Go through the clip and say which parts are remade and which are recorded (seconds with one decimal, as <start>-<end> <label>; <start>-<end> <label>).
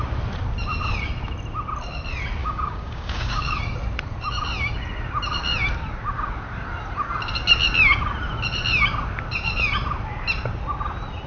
0.0-2.4 recorded; 2.4-3.6 remade; 3.6-11.3 recorded